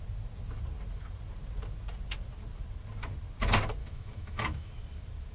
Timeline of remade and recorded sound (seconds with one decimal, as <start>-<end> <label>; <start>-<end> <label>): 0.0-3.8 recorded; 3.8-4.7 remade; 4.7-5.3 recorded